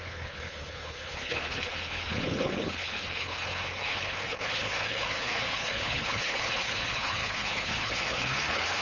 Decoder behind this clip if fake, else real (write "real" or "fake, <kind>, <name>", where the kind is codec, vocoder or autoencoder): fake, codec, HILCodec